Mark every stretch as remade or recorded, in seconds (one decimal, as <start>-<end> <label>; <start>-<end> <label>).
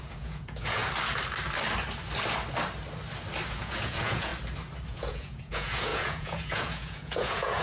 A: 0.0-0.8 remade; 0.8-3.5 recorded; 3.5-4.3 remade; 4.3-4.9 recorded; 4.9-7.6 remade